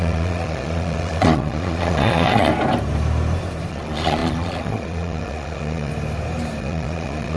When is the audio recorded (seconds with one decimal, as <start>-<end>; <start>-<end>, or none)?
2.5-3.7; 5.9-6.6